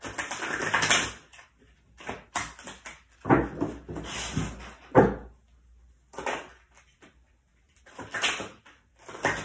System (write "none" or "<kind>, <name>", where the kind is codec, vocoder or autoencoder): none